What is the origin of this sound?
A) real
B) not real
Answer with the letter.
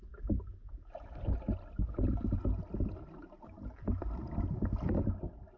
A